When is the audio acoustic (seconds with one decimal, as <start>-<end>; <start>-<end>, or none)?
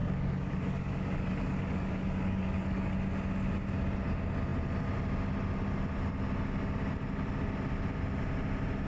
2.9-8.9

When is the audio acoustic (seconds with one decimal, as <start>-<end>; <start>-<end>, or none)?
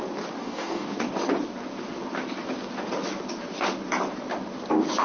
0.0-0.4; 1.1-5.0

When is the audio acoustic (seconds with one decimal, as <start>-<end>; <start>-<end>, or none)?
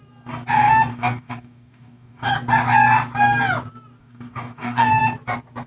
0.0-0.9; 2.3-4.0; 5.0-5.7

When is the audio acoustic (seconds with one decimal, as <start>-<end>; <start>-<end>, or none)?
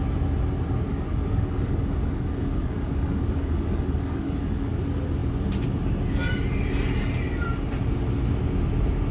0.0-0.9; 4.7-9.1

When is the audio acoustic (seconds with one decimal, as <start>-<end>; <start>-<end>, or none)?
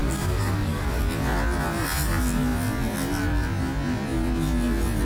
1.0-5.0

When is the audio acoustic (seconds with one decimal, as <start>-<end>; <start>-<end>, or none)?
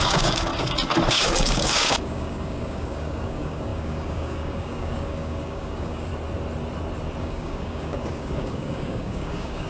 0.5-1.1; 6.1-7.2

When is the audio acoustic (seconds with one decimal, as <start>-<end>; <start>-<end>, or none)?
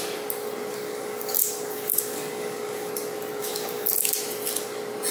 0.0-0.7; 2.9-3.4; 4.1-5.1